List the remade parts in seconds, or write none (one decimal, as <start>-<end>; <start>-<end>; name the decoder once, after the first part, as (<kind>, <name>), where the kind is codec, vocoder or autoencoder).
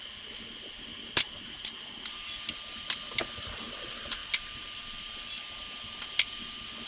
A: none